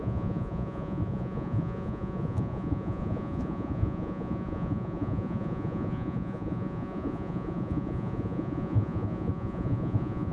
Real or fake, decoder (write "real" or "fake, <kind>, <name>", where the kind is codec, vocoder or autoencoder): fake, vocoder, Vocos